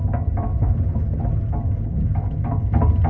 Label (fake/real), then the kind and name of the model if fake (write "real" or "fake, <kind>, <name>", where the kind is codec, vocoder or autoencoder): real